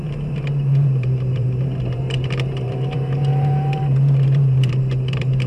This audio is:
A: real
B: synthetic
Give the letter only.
B